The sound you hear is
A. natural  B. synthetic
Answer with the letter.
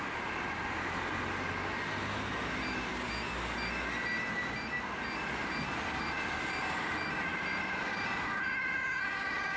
A